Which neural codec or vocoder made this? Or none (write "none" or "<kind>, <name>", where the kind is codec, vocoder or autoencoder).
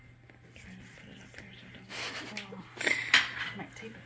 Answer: none